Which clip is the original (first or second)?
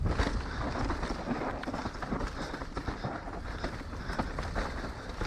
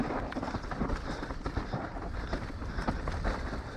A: first